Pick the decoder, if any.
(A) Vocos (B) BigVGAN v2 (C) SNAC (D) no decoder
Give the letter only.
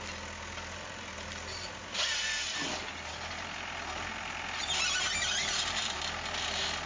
D